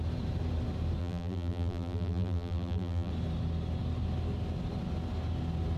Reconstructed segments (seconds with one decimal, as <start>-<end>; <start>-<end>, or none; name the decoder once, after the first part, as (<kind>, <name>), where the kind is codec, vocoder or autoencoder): 1.0-3.1 (vocoder, BigVGAN v2)